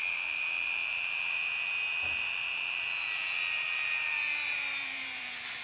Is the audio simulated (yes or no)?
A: yes